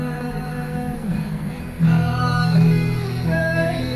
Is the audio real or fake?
fake